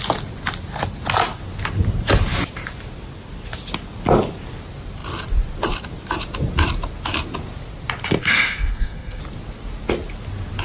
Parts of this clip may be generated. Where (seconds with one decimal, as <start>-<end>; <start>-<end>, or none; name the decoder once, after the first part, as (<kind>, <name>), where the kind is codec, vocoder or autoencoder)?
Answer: 8.2-9.2 (codec, SNAC)